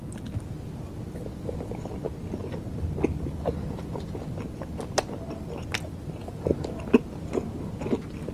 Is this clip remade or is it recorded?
recorded